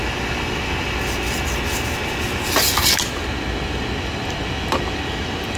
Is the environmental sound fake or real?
real